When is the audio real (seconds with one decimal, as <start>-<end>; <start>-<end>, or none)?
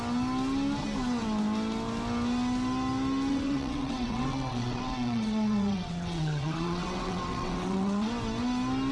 0.0-3.3; 8.1-8.9